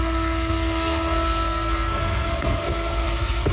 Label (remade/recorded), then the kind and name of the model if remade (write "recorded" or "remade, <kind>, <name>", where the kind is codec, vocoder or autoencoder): remade, codec, SNAC